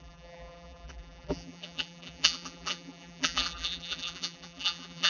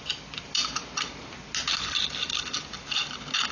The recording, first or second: second